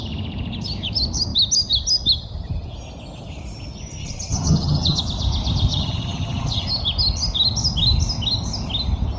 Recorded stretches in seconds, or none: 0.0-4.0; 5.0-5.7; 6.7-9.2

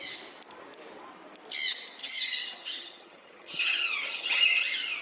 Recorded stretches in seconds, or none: 0.0-2.0; 4.4-5.0